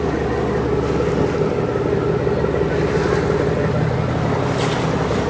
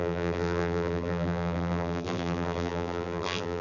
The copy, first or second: second